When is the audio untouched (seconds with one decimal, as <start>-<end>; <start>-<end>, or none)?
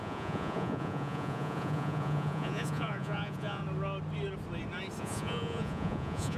3.6-5.0